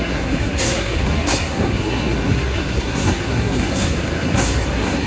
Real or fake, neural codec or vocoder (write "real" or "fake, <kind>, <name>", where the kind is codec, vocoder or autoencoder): fake, codec, SNAC